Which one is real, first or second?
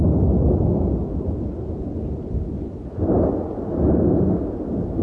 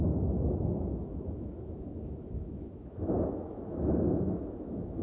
first